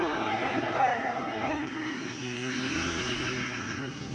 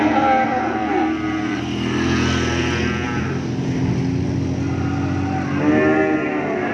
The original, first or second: second